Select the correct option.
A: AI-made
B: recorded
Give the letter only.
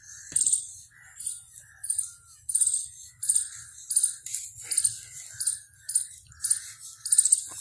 B